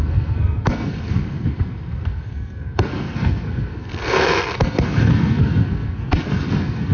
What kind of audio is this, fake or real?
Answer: fake